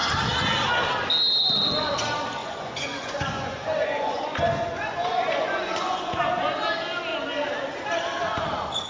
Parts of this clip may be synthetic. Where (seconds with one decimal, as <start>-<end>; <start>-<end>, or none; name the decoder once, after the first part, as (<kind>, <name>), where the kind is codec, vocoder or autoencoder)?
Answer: 2.4-6.2 (vocoder, Vocos)